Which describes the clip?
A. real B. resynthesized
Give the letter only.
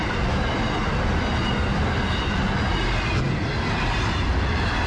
A